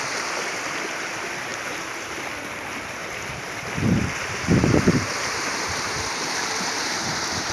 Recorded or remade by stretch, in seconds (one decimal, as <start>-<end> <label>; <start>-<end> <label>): 0.0-1.5 recorded; 1.5-2.2 remade; 2.2-4.2 recorded; 4.2-7.1 remade; 7.1-7.5 recorded